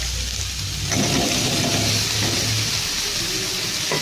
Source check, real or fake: real